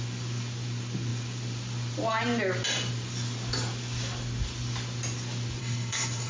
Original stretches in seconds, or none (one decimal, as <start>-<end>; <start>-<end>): 0.0-5.6